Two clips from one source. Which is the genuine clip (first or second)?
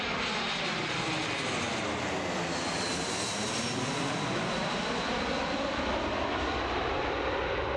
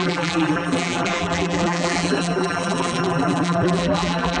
first